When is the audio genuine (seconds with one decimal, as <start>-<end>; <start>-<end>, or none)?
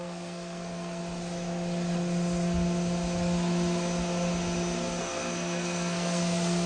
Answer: 1.0-5.0